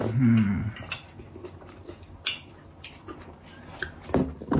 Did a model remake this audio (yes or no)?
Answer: no